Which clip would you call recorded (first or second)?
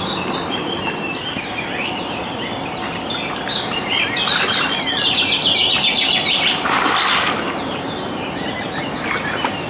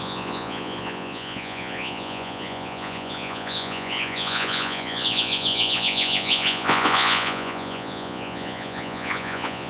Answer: first